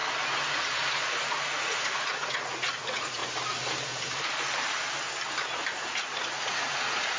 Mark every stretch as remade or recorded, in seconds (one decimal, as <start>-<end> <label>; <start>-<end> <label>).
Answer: 0.0-0.5 recorded; 0.5-3.2 remade; 3.2-6.0 recorded; 6.0-7.2 remade